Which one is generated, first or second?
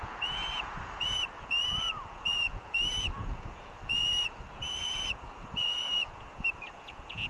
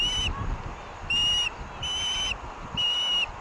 first